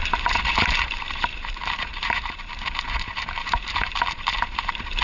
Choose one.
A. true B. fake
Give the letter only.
B